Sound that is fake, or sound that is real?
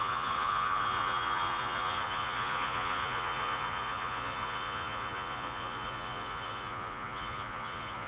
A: fake